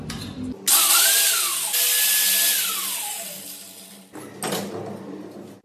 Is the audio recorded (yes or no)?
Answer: yes